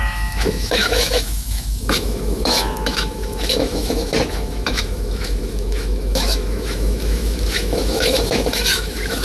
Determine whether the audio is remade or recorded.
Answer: remade